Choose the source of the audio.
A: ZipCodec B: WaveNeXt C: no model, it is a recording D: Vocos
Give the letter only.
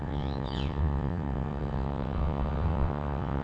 B